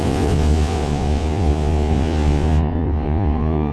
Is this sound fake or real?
fake